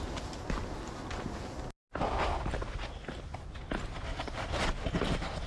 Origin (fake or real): real